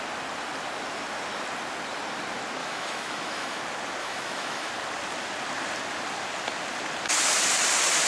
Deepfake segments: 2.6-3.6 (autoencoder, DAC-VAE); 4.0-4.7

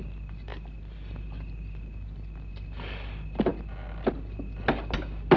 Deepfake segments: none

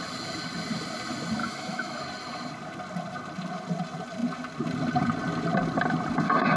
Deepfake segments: 1.4-2.0 (autoencoder, DAC-VAE)

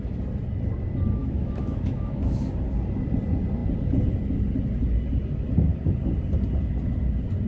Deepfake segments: 1.2-2.5 (autoencoder, DAC-VAE)

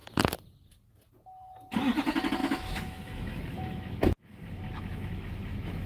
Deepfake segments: 2.4-5.9 (autoencoder, DAC-VAE)